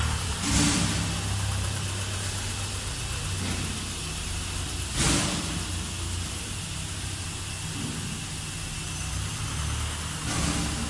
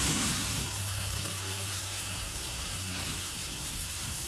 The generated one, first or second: second